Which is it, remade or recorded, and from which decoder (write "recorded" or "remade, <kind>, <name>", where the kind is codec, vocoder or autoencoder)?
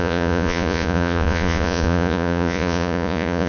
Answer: remade, vocoder, Vocos